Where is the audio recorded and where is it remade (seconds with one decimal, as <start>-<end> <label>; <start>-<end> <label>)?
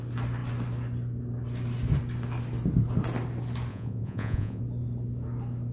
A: 0.0-3.7 recorded; 3.7-4.6 remade; 4.6-5.7 recorded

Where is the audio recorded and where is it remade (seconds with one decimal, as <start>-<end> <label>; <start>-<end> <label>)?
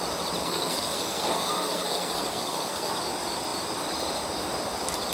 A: 0.0-0.4 recorded; 0.4-2.9 remade; 2.9-5.1 recorded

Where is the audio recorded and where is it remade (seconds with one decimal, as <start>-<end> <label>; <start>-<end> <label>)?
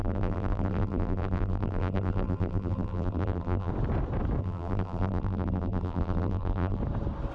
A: 0.0-3.7 remade; 3.7-4.4 recorded; 4.4-6.8 remade; 6.8-7.3 recorded